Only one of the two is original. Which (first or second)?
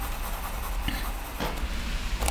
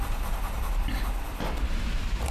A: first